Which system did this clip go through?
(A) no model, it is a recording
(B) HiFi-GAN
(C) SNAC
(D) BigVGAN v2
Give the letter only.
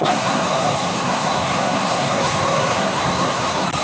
C